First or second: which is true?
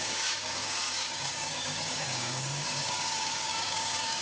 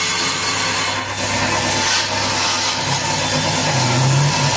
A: second